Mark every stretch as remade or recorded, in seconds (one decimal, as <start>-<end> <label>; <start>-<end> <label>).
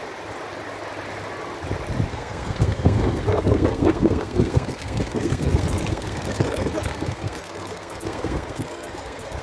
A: 0.0-2.1 recorded; 2.1-9.4 remade